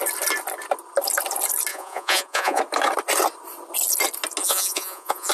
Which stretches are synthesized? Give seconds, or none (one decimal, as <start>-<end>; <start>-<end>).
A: 1.7-2.6; 4.4-5.3